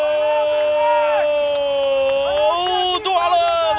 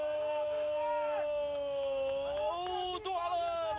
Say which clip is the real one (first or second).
first